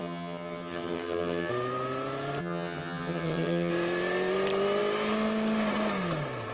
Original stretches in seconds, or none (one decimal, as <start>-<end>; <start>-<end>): 1.5-2.4; 3.7-6.5